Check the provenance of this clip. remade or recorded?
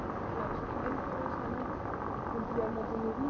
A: recorded